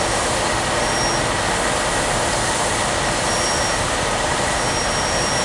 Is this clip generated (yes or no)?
no